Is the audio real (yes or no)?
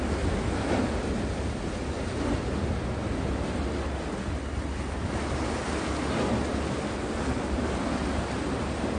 yes